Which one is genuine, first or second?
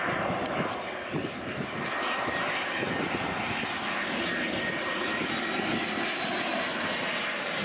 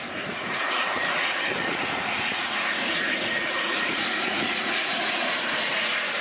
first